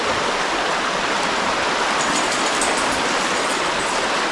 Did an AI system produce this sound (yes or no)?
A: no